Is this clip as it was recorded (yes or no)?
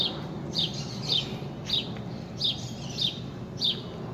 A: yes